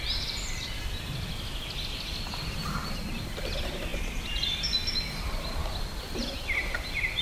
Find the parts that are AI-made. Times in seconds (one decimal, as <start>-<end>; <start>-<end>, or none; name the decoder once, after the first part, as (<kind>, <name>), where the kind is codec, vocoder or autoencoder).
none